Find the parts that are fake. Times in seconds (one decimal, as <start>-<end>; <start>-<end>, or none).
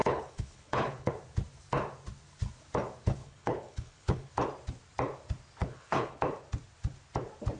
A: 0.0-1.1; 3.2-4.3; 5.6-6.2